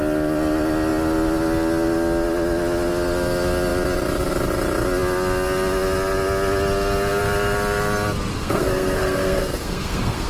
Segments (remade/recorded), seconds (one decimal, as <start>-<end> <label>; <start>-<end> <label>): 0.0-8.3 recorded; 8.3-10.3 remade